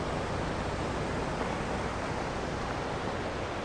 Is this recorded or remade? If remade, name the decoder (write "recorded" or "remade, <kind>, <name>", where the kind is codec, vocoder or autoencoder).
recorded